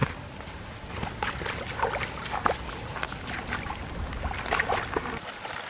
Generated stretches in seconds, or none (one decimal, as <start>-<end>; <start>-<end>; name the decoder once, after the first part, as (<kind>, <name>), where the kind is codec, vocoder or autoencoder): none